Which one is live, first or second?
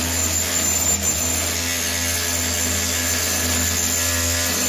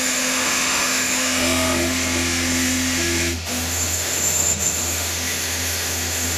first